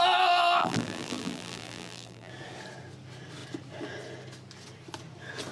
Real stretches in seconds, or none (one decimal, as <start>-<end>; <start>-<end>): 0.0-0.6; 2.3-5.5

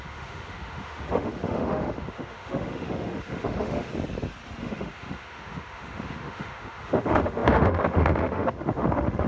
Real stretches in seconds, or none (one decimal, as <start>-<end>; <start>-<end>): 3.9-4.6

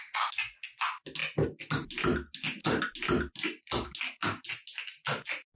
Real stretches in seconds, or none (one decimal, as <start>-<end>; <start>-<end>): 0.0-5.6

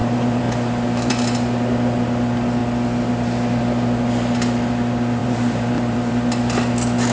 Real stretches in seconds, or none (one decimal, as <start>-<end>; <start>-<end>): 1.1-5.2; 6.1-7.1

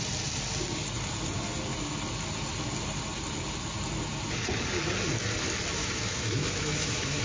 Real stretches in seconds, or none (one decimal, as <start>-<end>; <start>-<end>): 0.0-5.8

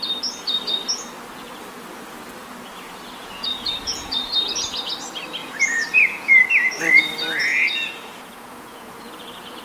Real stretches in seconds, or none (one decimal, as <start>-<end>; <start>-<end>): 0.0-3.2; 4.3-5.4; 6.3-7.5; 9.1-9.6

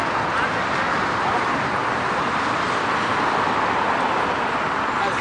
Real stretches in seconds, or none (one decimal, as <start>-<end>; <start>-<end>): 0.0-0.7